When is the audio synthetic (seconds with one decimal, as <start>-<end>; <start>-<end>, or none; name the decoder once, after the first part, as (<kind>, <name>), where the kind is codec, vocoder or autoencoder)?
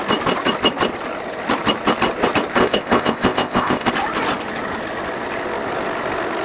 2.6-3.9 (codec, ZipCodec)